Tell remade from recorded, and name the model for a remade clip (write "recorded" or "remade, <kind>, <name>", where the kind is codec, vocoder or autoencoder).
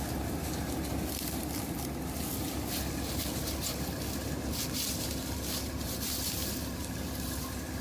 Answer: recorded